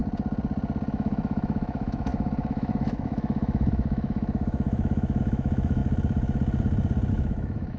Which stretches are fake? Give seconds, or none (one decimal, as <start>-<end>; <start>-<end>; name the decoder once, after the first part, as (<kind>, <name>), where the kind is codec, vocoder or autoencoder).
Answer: 0.9-5.8 (autoencoder, DAC-VAE); 7.1-7.8